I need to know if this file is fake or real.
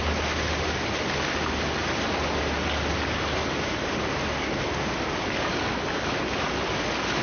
real